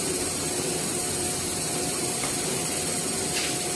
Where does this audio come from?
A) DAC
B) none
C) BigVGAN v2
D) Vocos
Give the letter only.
B